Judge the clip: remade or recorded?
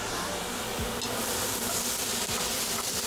recorded